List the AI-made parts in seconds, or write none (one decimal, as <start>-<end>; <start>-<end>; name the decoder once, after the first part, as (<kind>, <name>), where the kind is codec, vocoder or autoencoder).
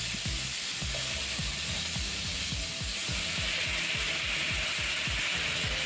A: none